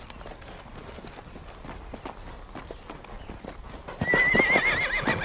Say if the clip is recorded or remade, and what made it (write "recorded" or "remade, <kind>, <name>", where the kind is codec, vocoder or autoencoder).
recorded